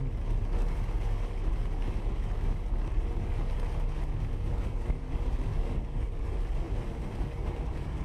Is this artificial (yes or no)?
yes